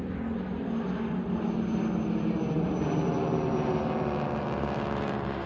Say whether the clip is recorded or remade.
recorded